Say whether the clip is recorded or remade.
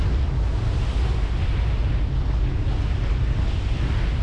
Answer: recorded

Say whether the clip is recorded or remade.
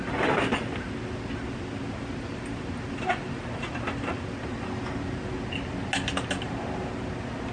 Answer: recorded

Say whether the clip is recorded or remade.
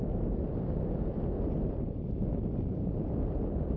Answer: recorded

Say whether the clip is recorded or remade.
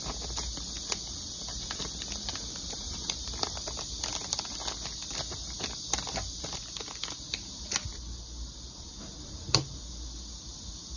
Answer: recorded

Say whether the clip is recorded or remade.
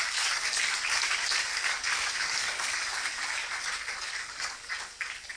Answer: remade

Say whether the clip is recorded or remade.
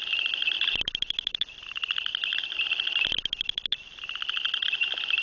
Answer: recorded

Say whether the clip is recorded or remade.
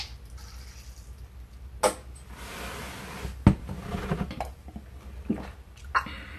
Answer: recorded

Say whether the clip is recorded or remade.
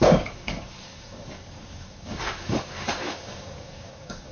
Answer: remade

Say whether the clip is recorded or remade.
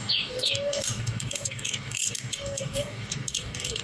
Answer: remade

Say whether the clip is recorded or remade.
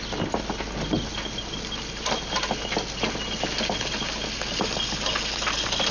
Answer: recorded